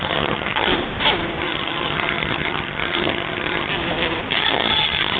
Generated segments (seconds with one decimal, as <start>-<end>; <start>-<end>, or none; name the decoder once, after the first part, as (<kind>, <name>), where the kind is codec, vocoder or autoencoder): 0.0-0.7 (vocoder, HiFi-GAN); 1.4-3.7; 4.3-5.2

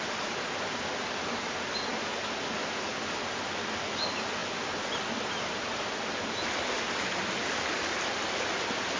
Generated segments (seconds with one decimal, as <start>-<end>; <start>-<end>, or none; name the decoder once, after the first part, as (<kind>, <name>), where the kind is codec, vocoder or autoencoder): none

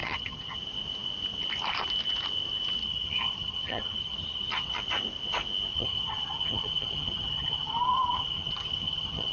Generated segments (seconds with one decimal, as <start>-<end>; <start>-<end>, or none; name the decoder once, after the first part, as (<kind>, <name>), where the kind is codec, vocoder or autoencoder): 0.0-0.6 (vocoder, HiFi-GAN); 2.8-4.8; 5.7-9.3

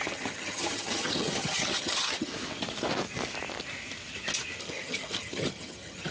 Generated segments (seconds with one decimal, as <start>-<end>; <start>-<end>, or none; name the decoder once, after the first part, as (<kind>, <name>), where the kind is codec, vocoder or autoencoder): 0.0-2.3 (vocoder, HiFi-GAN); 4.6-6.1

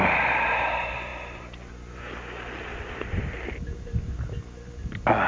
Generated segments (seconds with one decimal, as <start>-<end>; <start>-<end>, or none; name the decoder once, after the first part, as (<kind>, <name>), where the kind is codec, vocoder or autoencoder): none

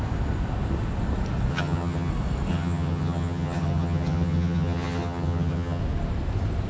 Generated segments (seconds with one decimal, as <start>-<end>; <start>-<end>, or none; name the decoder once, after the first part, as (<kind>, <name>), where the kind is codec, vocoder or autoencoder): 1.5-2.1 (vocoder, HiFi-GAN); 2.5-5.8

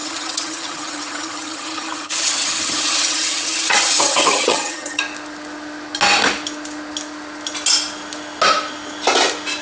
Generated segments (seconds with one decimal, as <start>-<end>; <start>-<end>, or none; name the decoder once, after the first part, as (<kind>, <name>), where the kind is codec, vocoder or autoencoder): 0.0-5.0 (vocoder, HiFi-GAN)

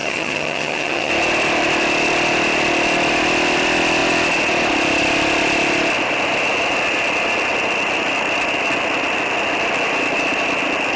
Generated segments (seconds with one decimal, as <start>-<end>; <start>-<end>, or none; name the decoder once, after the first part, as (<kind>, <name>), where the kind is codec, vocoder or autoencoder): 0.0-1.1 (vocoder, HiFi-GAN)